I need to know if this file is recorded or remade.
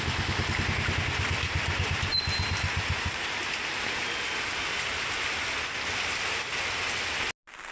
recorded